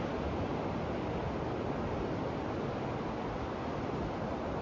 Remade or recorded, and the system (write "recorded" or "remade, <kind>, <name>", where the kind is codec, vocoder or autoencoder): recorded